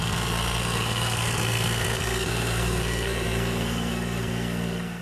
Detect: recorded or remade remade